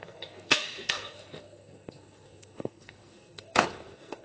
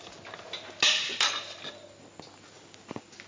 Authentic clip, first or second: second